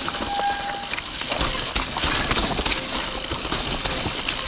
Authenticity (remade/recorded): recorded